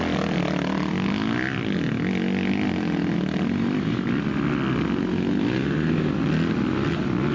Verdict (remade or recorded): recorded